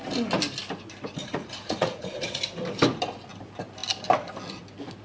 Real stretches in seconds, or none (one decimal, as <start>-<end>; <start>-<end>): 0.0-1.2; 2.4-5.0